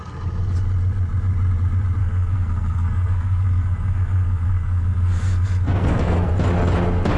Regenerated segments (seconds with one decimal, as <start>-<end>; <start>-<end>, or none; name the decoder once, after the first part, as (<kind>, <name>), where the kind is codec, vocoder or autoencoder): 2.0-6.3 (codec, SNAC)